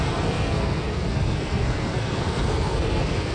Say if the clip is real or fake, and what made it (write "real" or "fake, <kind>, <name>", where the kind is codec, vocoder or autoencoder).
fake, codec, SNAC